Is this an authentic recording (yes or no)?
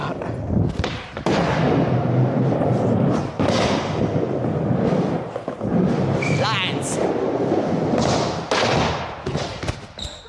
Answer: yes